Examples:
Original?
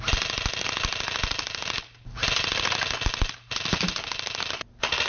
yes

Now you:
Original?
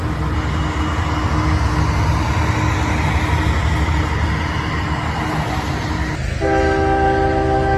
yes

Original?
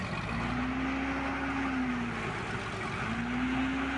yes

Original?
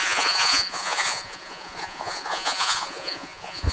no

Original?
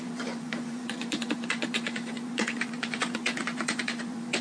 no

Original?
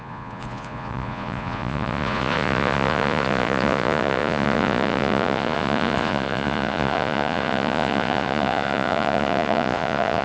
no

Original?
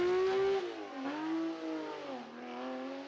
yes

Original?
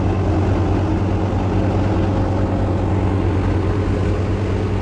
yes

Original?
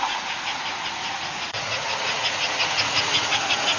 no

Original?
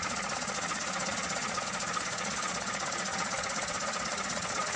no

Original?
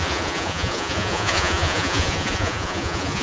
no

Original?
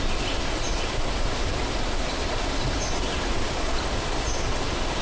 yes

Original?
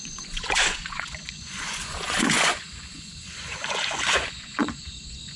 no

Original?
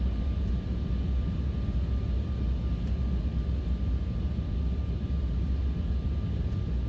yes